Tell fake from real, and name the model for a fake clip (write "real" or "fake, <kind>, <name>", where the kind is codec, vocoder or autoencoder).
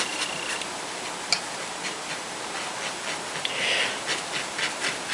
real